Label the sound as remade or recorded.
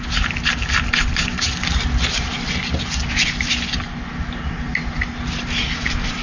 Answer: recorded